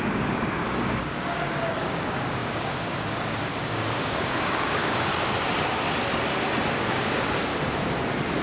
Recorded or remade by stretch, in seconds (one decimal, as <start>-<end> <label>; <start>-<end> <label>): 0.0-5.1 remade; 5.1-6.7 recorded; 6.7-7.5 remade; 7.5-8.4 recorded